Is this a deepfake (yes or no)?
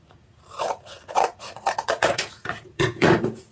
yes